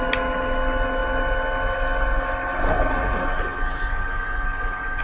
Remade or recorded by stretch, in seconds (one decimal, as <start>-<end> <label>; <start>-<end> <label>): 0.0-5.0 recorded